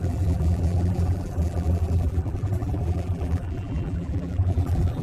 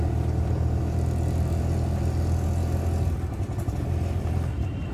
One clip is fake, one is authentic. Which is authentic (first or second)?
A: second